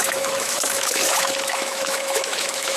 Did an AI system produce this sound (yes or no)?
yes